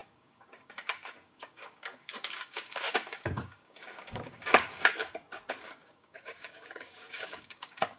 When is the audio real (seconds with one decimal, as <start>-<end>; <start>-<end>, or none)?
5.0-5.5